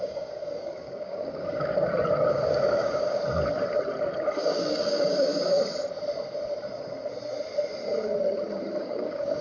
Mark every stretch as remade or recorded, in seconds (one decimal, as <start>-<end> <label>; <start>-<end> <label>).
0.0-1.7 remade; 1.7-2.3 recorded; 2.3-3.2 remade; 3.2-4.4 recorded; 4.4-5.3 remade; 5.3-8.8 recorded; 8.8-9.4 remade